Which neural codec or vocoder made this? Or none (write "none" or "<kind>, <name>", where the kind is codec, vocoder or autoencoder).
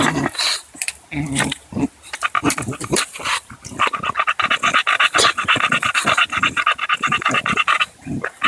none